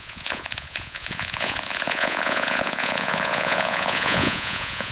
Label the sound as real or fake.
fake